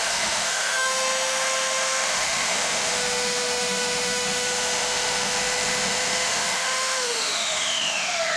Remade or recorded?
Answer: remade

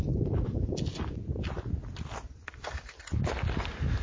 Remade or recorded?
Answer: recorded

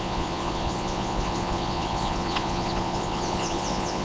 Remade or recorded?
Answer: remade